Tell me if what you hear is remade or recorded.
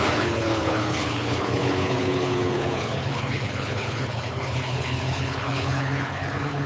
remade